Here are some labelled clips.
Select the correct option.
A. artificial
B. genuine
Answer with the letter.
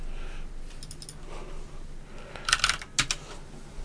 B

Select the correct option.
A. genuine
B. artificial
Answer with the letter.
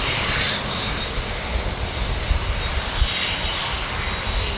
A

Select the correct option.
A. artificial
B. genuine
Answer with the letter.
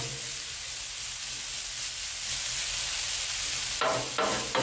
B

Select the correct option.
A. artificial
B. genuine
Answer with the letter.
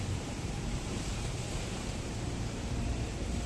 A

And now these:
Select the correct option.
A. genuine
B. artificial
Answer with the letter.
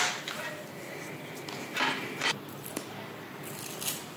A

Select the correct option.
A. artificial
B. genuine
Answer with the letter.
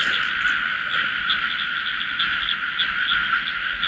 B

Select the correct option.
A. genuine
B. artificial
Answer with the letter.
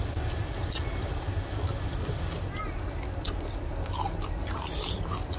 A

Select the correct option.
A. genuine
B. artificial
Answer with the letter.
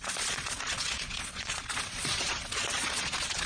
B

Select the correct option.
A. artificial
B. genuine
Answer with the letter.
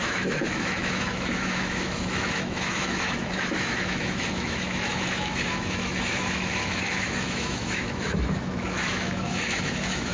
A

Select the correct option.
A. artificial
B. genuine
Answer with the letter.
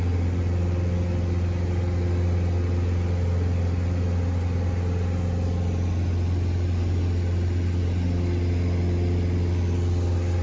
B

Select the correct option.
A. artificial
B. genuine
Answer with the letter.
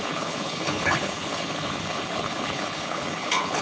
A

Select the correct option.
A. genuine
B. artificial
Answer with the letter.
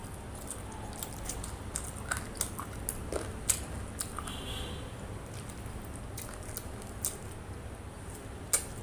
A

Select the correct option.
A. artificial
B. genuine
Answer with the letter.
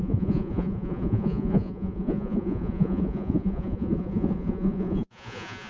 A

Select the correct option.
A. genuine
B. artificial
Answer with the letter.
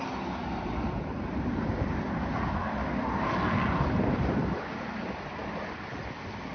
A